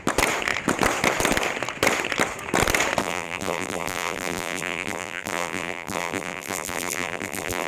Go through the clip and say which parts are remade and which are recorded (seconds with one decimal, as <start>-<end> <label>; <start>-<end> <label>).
0.0-3.0 recorded; 3.0-7.7 remade